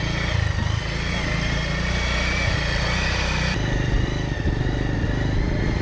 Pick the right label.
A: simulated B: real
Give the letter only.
B